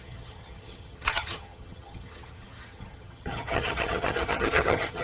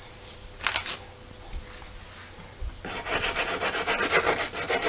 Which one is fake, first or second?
first